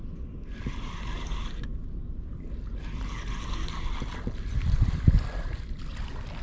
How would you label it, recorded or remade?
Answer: recorded